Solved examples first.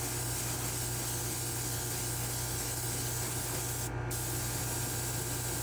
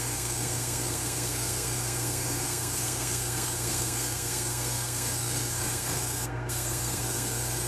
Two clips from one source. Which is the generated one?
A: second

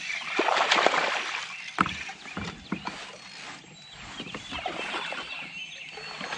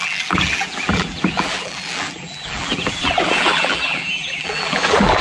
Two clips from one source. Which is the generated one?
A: second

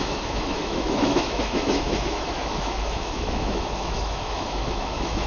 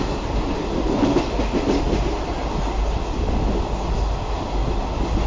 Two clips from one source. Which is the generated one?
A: first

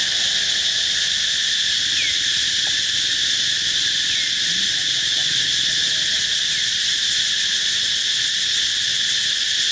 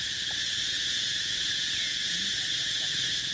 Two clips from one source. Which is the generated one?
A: second